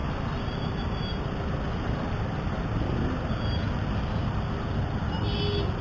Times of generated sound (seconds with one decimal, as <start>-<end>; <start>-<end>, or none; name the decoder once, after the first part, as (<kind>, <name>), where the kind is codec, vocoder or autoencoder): none